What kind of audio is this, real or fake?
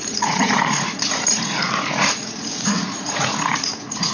fake